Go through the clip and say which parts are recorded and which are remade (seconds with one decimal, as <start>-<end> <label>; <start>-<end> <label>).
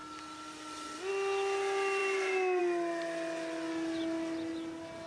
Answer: 0.0-5.1 recorded